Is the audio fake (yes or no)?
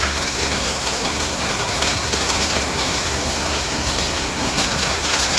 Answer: yes